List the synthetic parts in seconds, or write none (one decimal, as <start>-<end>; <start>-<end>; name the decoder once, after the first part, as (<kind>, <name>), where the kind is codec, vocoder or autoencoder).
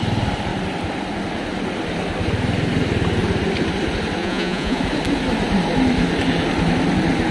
4.2-4.8 (vocoder, Vocos)